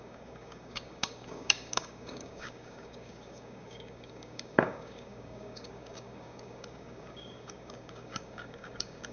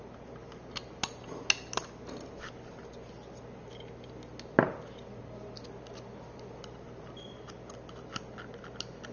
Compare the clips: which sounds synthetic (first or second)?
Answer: first